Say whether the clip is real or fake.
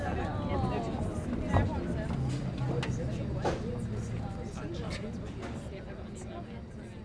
real